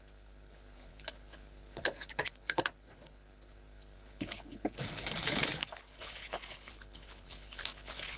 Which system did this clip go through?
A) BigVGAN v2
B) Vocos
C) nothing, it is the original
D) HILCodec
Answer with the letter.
D